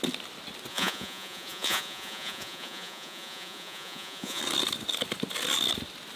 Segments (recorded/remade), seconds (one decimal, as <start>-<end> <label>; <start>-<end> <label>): 0.0-0.7 recorded; 0.7-4.4 remade; 4.4-6.2 recorded